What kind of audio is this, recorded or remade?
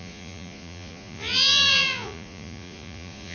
remade